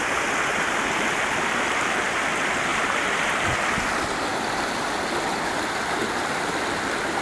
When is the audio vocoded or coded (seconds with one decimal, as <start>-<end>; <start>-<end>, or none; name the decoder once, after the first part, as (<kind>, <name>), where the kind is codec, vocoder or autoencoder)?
none